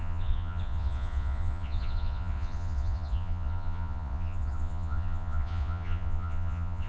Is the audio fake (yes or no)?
yes